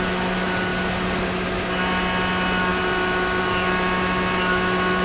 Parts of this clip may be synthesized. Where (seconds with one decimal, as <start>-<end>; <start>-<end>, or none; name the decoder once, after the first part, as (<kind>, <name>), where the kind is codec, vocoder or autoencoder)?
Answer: none